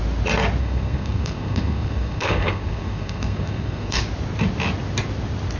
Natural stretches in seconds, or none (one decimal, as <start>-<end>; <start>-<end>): 0.0-0.6; 4.0-5.6